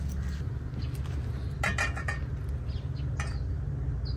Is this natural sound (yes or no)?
yes